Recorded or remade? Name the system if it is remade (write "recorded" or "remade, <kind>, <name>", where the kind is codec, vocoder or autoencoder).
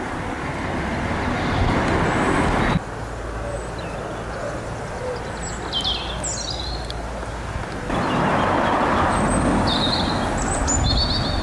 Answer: recorded